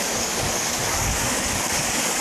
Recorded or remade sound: remade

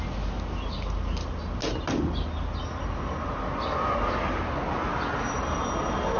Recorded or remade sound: recorded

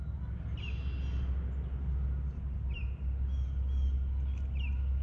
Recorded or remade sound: recorded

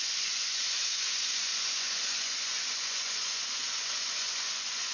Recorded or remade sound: remade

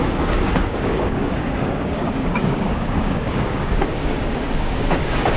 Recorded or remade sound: remade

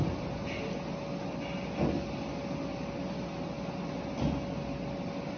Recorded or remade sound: recorded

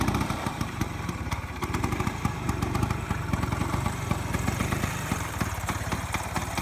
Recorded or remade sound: remade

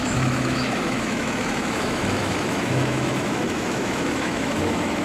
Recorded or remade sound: remade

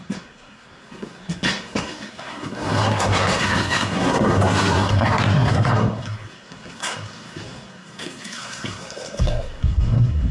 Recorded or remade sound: remade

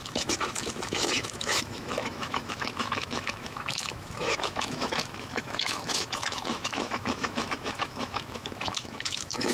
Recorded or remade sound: remade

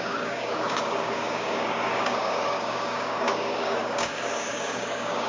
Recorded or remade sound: remade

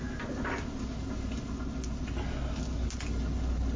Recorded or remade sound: recorded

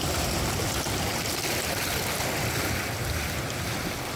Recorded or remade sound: recorded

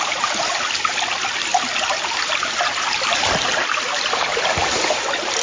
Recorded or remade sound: recorded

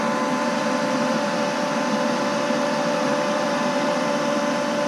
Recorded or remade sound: remade